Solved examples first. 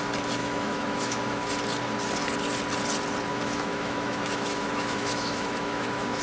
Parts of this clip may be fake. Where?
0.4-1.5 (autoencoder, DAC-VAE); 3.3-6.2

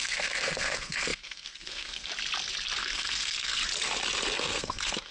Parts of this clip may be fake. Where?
0.0-2.1 (codec, SNAC); 2.8-3.6; 4.4-5.1

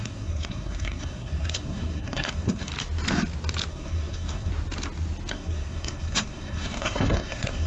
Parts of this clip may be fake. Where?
0.0-2.7 (codec, SNAC); 3.7-4.5; 5.3-7.7